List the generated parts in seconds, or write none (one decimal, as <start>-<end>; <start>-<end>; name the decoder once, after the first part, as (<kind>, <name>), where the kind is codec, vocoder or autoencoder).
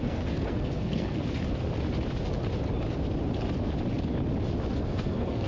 0.0-1.4 (codec, SNAC); 4.7-5.5